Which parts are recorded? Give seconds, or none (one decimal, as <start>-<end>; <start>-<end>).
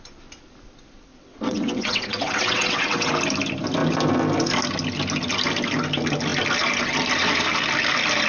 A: 0.0-1.1; 3.1-8.3